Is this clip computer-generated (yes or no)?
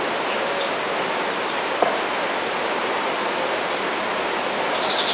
no